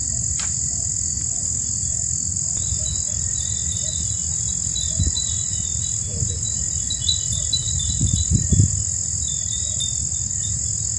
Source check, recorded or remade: recorded